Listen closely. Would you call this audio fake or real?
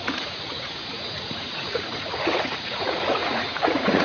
fake